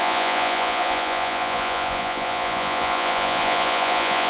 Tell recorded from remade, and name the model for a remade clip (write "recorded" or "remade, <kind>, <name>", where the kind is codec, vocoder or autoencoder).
remade, vocoder, Vocos